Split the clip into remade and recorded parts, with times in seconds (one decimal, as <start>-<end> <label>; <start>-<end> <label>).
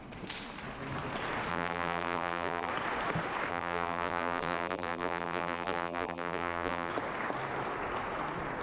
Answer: 0.0-1.5 recorded; 1.5-2.7 remade; 2.7-3.5 recorded; 3.5-6.9 remade; 6.9-8.6 recorded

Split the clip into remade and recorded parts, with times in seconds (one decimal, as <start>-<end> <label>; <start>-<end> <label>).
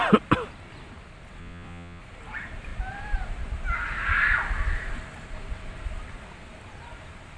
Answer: 0.0-1.4 recorded; 1.4-2.0 remade; 2.0-7.4 recorded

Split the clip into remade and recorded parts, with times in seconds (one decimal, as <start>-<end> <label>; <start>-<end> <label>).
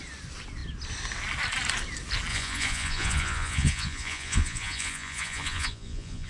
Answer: 0.0-2.3 recorded; 2.3-6.3 remade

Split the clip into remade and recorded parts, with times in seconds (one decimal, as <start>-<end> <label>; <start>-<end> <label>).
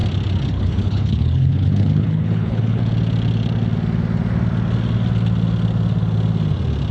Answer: 0.0-0.5 recorded; 0.5-2.8 remade; 2.8-6.9 recorded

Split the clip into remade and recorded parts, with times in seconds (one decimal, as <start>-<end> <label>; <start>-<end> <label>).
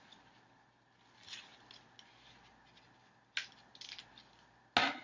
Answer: 0.0-5.0 recorded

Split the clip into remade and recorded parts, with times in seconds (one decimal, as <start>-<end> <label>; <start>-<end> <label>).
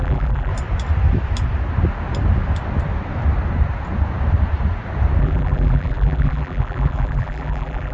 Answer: 0.0-0.5 remade; 0.5-5.2 recorded; 5.2-7.9 remade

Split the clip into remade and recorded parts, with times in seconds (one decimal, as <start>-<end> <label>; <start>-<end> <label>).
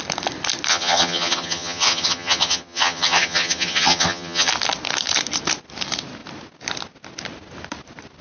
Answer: 0.0-0.7 recorded; 0.7-4.5 remade; 4.5-8.2 recorded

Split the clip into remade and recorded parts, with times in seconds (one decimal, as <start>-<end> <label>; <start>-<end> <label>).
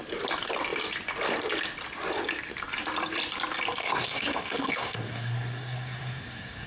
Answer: 0.0-3.8 recorded; 3.8-6.7 remade